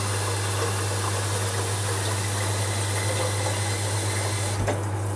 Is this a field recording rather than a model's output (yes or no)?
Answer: yes